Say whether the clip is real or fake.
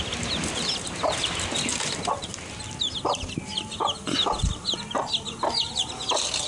real